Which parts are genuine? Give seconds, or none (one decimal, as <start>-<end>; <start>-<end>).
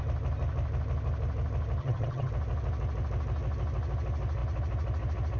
0.0-1.8; 2.3-5.4